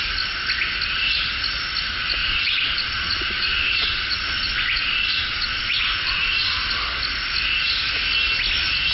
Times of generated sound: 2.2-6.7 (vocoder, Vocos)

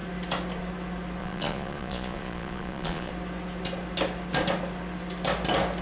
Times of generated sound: 1.2-3.1 (vocoder, Vocos)

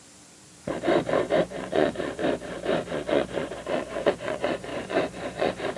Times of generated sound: 0.0-0.7 (vocoder, Vocos); 1.4-2.2; 2.9-5.8

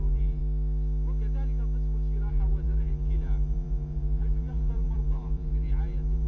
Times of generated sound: 0.0-0.4 (vocoder, Vocos); 2.3-6.3